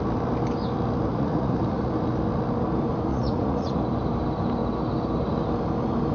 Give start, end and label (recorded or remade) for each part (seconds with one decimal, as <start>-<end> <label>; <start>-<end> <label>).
0.0-1.1 recorded; 1.1-1.9 remade; 1.9-3.1 recorded; 3.1-3.8 remade; 3.8-6.1 recorded